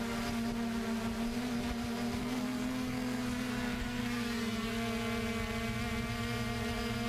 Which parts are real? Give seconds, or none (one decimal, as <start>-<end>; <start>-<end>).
0.0-2.2; 4.7-7.1